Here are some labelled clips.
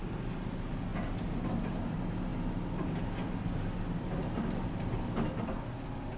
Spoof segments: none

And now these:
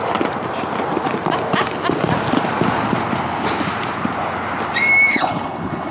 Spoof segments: 5.1-5.9

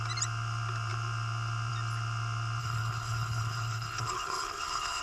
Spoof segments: 2.6-5.0